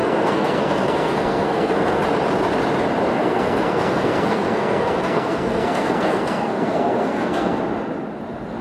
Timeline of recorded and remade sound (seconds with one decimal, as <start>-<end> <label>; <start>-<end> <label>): 0.0-2.0 remade; 2.0-3.1 recorded; 3.1-7.6 remade; 7.6-8.6 recorded